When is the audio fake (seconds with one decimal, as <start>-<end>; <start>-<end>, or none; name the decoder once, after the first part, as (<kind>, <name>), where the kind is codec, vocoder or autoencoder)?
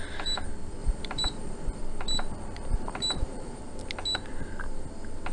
0.8-1.8 (vocoder, BigVGAN v2); 2.7-3.6